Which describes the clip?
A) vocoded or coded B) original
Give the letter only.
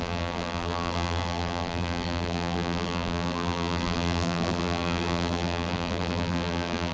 A